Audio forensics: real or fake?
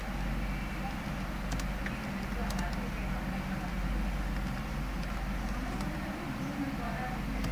real